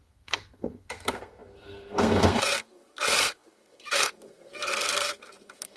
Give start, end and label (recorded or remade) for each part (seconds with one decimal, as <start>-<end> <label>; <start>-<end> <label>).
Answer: 0.0-5.8 remade

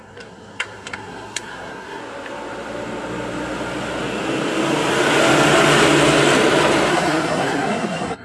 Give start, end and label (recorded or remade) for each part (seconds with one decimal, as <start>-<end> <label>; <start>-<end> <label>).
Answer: 0.0-2.0 remade; 2.0-6.9 recorded; 6.9-8.2 remade

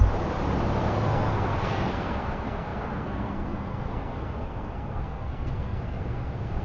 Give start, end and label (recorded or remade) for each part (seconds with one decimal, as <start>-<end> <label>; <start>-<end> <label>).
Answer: 0.0-0.8 recorded; 0.8-6.6 remade

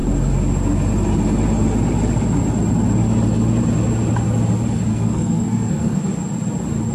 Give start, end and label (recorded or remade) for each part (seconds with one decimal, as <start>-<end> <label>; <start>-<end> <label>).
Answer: 0.0-4.9 recorded; 4.9-6.0 remade; 6.0-6.9 recorded